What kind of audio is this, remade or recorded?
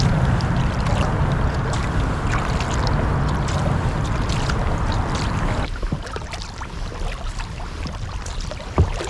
recorded